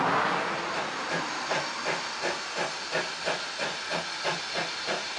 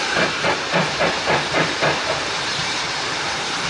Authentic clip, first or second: first